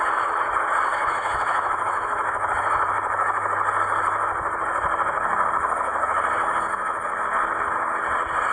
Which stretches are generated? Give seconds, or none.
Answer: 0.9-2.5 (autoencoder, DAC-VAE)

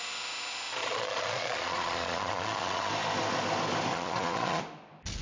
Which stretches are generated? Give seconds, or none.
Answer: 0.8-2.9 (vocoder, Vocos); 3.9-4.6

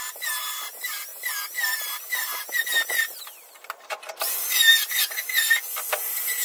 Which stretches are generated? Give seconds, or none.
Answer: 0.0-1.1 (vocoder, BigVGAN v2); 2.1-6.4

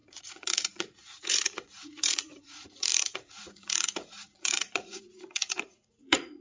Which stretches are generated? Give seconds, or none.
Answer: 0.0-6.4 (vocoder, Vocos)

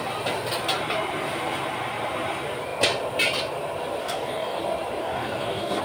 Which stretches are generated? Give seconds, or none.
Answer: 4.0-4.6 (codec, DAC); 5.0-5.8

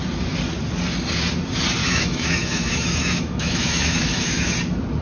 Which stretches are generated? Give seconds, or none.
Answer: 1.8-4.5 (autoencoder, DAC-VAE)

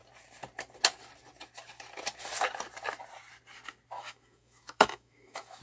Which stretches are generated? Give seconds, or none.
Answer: 4.0-5.6 (autoencoder, DAC-VAE)